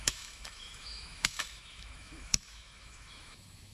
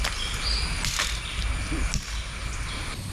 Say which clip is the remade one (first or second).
first